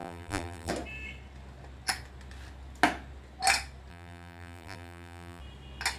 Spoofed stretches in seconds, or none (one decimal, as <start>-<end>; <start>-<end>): 0.0-0.7; 3.9-5.4